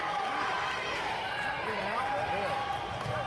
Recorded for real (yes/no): yes